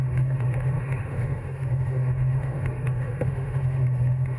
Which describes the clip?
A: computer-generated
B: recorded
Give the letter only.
A